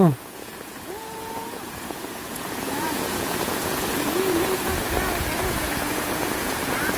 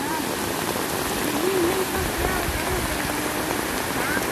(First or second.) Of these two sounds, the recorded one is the second